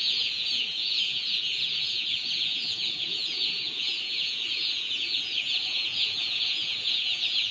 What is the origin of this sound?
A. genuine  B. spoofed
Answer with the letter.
B